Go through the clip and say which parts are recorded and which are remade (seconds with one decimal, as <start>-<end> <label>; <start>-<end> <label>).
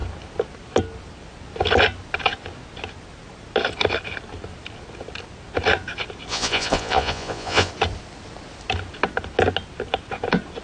0.0-6.3 recorded; 6.3-7.7 remade; 7.7-10.6 recorded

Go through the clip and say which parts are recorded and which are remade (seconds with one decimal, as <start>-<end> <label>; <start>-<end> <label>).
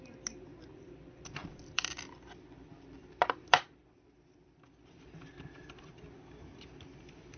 0.0-1.4 recorded; 1.4-3.9 remade; 3.9-7.4 recorded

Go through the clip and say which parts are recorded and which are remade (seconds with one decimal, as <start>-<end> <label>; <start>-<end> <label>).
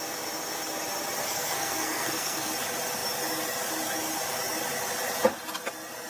0.0-1.2 recorded; 1.2-2.5 remade; 2.5-6.1 recorded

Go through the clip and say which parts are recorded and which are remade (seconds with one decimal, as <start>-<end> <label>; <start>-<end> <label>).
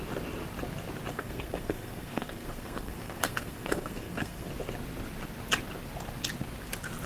0.0-1.1 recorded; 1.1-4.5 remade; 4.5-7.1 recorded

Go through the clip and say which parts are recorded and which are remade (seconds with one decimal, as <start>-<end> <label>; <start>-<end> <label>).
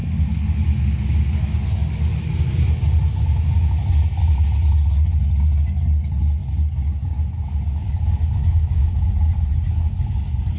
0.0-8.4 recorded; 8.4-9.1 remade; 9.1-10.6 recorded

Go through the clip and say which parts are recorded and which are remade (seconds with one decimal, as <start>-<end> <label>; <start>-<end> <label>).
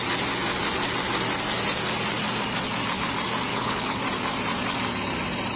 0.0-3.5 recorded; 3.5-4.0 remade; 4.0-5.6 recorded